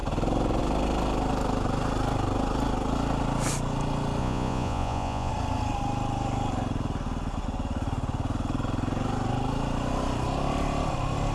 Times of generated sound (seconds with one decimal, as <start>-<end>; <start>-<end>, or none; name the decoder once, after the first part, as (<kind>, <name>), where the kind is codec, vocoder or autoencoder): 4.2-5.3 (vocoder, Vocos)